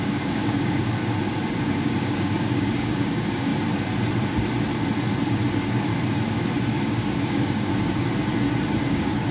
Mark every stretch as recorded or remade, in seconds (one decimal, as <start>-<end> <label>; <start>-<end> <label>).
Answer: 0.0-1.0 remade; 1.0-1.6 recorded; 1.6-3.5 remade; 3.5-5.5 recorded; 5.5-5.9 remade; 5.9-6.8 recorded; 6.8-7.7 remade; 7.7-8.9 recorded; 8.9-9.3 remade